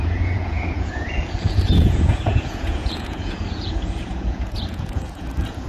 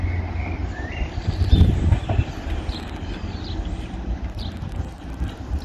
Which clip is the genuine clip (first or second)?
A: second